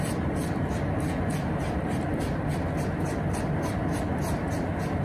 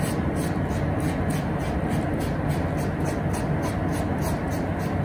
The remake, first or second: first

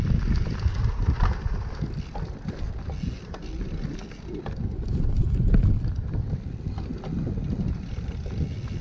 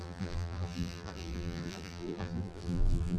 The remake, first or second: second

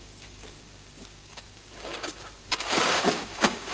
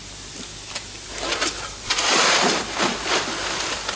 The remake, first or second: first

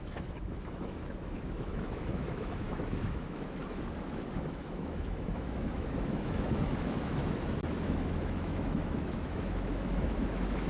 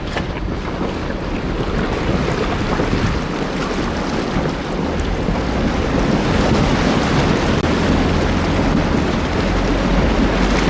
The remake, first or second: first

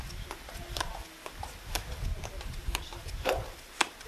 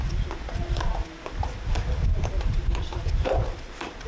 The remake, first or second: second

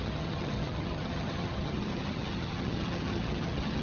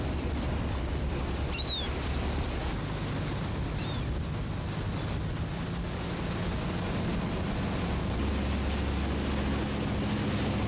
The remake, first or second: first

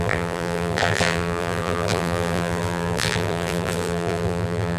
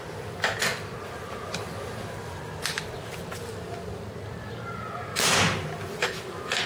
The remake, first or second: first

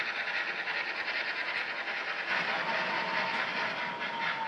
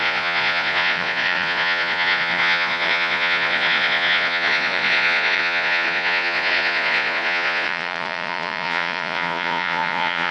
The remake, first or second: second